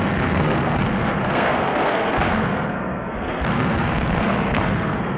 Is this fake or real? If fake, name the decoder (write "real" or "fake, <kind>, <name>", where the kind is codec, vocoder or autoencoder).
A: fake, codec, SNAC